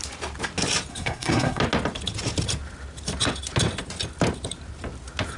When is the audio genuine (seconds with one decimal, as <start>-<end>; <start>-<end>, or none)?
0.0-0.9; 1.6-5.4